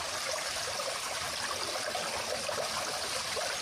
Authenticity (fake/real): real